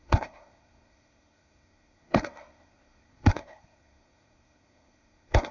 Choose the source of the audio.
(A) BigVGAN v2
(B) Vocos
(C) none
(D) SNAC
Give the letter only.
D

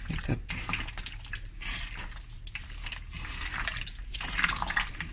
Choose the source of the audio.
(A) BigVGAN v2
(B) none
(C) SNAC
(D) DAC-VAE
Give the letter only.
B